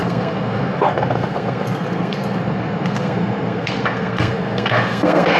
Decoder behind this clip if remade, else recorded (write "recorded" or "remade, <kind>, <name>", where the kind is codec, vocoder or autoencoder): remade, codec, SNAC